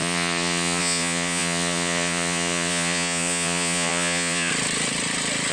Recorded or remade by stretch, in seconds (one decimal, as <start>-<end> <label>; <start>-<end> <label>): 0.0-4.5 remade; 4.5-5.5 recorded